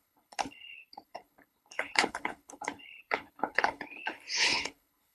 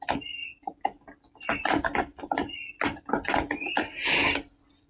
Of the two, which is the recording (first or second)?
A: second